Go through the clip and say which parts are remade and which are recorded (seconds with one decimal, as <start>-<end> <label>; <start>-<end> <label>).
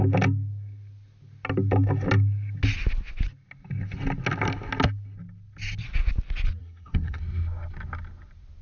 0.0-6.6 recorded; 6.6-7.2 remade; 7.2-8.6 recorded